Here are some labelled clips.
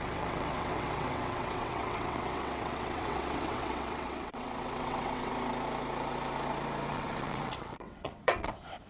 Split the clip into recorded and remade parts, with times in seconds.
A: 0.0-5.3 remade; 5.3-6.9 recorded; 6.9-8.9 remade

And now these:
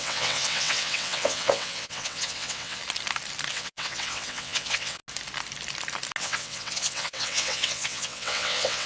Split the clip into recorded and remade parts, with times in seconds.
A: 0.0-2.8 remade; 2.8-3.5 recorded; 3.5-5.0 remade; 5.0-6.2 recorded; 6.2-8.9 remade

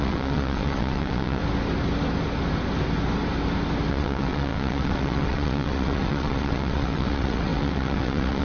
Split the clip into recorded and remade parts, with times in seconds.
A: 0.0-1.4 remade; 1.4-3.9 recorded; 3.9-8.4 remade

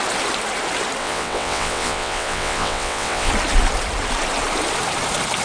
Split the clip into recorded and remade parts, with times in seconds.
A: 0.0-1.0 recorded; 1.0-3.3 remade; 3.3-5.4 recorded